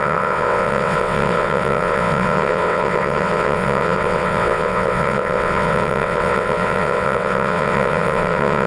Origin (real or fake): fake